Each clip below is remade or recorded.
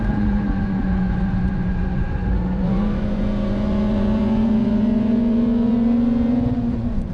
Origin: remade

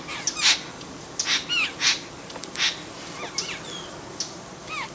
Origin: recorded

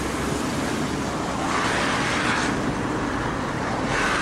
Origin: recorded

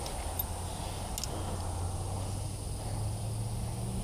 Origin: recorded